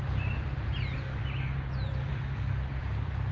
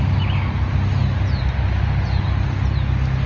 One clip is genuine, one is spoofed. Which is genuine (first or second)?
second